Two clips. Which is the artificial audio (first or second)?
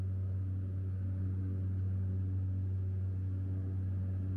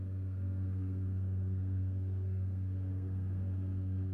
second